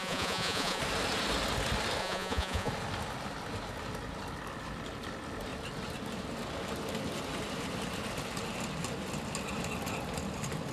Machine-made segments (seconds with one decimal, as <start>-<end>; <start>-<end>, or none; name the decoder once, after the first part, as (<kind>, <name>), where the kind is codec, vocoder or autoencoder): 0.0-0.8 (vocoder, Vocos); 2.0-2.7